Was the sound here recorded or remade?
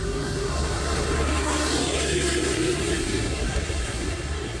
remade